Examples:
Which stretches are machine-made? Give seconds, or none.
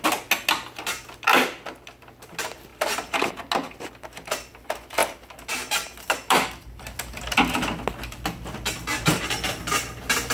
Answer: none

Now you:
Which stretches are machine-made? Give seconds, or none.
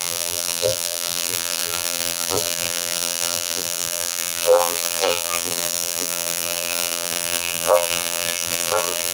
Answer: 0.0-9.1 (vocoder, BigVGAN v2)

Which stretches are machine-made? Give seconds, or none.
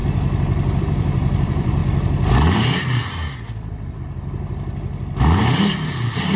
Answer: 0.8-1.8 (vocoder, BigVGAN v2); 5.6-6.4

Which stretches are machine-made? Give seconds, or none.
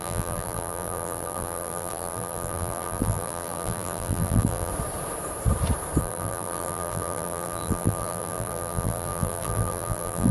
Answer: 0.0-4.7 (vocoder, BigVGAN v2); 6.0-10.3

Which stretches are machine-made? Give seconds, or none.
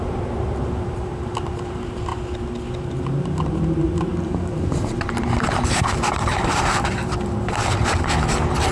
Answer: 0.0-2.1 (vocoder, BigVGAN v2); 2.8-8.7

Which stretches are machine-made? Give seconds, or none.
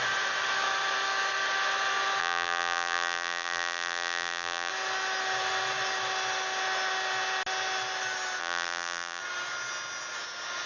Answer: 2.2-4.7 (vocoder, BigVGAN v2); 8.4-9.2